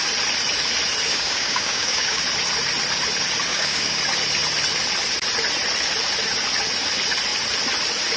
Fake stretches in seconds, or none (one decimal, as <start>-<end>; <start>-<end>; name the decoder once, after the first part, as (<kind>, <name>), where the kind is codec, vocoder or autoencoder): 1.1-2.2 (codec, DAC); 3.5-4.0